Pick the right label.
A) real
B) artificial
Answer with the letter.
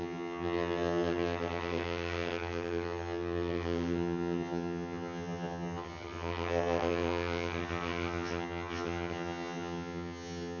B